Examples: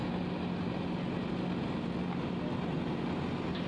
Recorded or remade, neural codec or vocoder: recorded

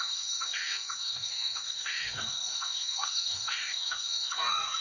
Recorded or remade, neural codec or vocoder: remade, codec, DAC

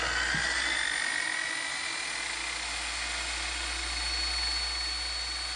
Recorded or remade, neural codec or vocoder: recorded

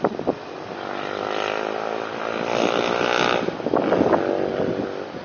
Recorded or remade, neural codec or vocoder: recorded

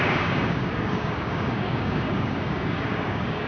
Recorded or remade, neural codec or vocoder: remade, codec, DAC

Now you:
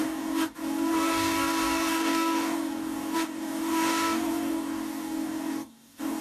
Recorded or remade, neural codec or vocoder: remade, codec, DAC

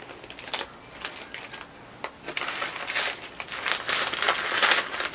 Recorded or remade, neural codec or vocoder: recorded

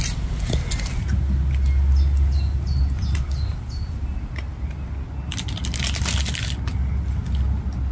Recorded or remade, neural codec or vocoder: recorded